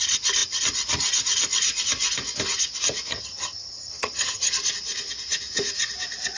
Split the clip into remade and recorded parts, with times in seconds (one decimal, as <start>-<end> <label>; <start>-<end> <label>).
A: 0.0-3.1 recorded; 3.1-4.5 remade; 4.5-6.4 recorded